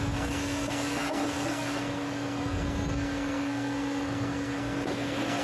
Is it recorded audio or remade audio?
remade